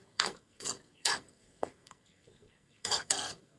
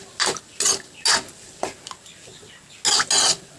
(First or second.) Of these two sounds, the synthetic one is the first